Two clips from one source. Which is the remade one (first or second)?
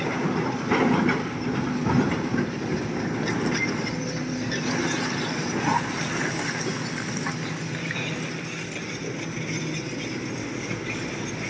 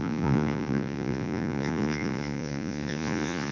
second